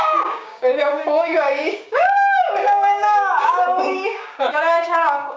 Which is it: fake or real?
fake